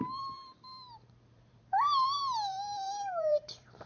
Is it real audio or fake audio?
fake